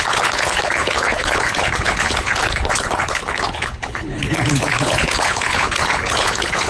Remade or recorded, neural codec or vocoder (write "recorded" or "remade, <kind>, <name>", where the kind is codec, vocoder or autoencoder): remade, codec, HILCodec